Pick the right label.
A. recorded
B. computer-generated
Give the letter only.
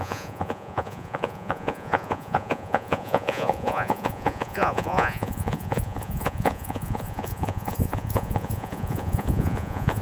B